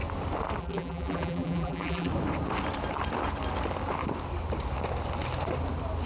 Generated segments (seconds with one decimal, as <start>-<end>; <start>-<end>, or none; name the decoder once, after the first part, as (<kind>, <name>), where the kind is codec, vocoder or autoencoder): 0.6-2.1 (vocoder, BigVGAN v2)